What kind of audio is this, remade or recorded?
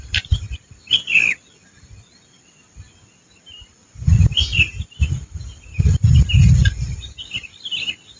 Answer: recorded